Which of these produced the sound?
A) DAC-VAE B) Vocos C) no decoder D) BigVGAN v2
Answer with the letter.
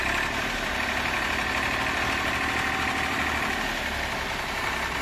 C